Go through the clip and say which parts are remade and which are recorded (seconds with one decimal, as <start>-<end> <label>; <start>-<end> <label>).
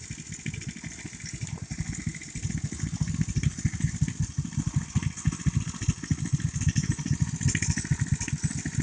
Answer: 0.0-8.8 recorded